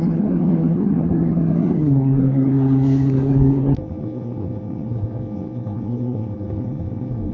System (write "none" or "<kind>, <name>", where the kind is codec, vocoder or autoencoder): codec, SNAC